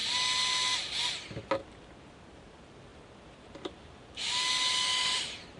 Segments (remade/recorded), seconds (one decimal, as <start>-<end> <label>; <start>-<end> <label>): 0.0-2.3 recorded; 2.3-2.9 remade; 2.9-5.0 recorded; 5.0-5.6 remade